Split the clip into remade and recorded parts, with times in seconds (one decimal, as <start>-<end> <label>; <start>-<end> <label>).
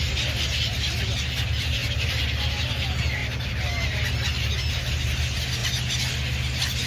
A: 0.0-6.9 recorded